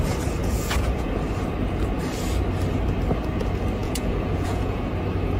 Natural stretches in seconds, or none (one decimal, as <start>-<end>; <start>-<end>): 0.0-0.4; 1.1-3.8; 4.8-5.4